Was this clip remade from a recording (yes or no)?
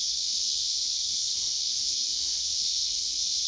yes